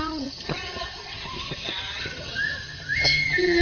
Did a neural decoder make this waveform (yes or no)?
yes